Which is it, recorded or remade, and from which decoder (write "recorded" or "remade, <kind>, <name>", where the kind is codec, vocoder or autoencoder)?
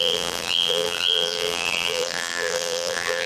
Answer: remade, vocoder, BigVGAN v2